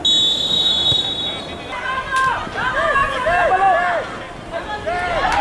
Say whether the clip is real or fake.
real